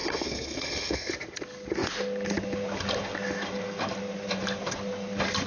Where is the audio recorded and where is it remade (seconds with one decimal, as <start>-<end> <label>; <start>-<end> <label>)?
0.0-1.1 remade; 1.1-5.5 recorded